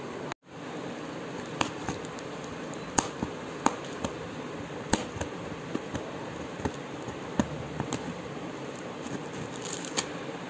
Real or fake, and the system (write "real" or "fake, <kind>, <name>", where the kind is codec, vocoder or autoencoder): real